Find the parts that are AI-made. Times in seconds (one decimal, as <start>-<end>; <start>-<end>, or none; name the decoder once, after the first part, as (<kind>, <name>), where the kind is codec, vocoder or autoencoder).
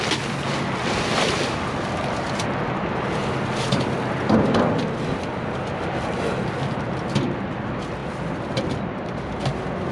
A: none